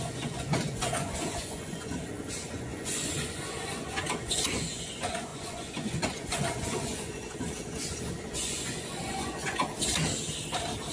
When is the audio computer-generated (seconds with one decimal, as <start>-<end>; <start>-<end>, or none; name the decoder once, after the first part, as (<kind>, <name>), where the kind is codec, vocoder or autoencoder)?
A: 0.0-9.6 (vocoder, Vocos)